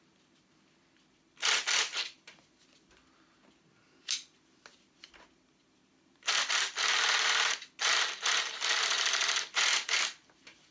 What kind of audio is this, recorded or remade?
recorded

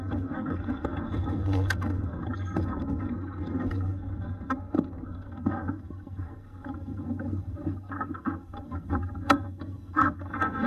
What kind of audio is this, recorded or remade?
remade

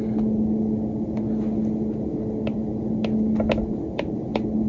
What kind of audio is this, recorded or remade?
recorded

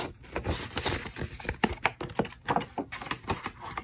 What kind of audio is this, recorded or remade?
recorded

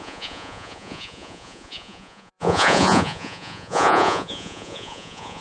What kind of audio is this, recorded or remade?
remade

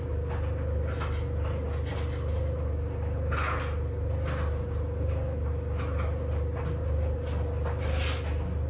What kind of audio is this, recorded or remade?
recorded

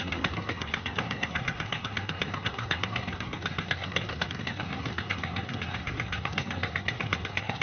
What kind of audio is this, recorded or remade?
remade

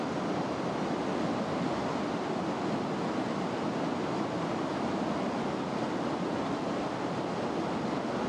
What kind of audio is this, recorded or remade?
recorded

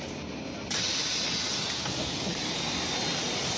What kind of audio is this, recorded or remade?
recorded